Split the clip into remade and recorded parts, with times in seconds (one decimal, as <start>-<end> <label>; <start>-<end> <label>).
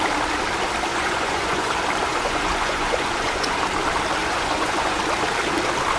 0.0-0.9 recorded; 0.9-1.7 remade; 1.7-2.1 recorded; 2.1-3.6 remade; 3.6-4.2 recorded; 4.2-5.0 remade; 5.0-6.0 recorded